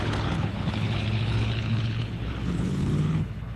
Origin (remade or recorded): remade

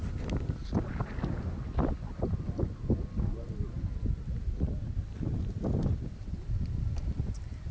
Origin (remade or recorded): recorded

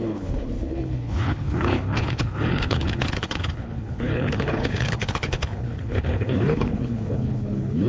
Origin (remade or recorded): remade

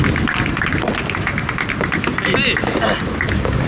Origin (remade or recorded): recorded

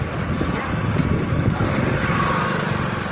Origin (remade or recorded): recorded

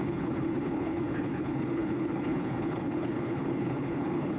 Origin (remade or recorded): remade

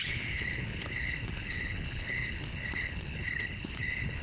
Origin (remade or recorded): remade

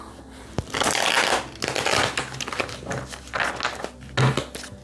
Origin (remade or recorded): recorded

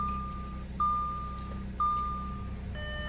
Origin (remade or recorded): recorded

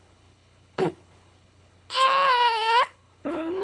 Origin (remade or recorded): remade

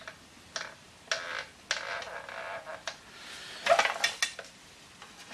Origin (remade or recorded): recorded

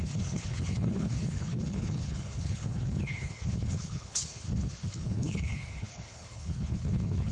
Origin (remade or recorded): remade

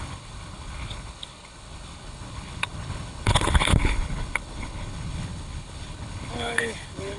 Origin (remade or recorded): remade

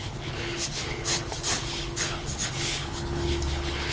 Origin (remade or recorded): remade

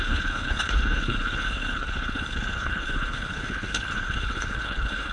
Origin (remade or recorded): remade